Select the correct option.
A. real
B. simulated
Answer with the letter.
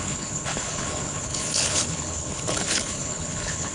B